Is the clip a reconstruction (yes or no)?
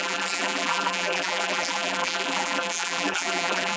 yes